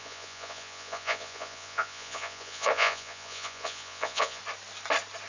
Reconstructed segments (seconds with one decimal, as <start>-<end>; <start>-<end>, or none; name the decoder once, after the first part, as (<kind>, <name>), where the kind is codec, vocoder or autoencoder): 0.0-4.4 (vocoder, Vocos)